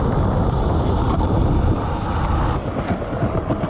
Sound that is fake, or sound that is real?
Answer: fake